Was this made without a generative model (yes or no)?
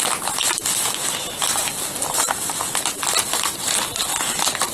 yes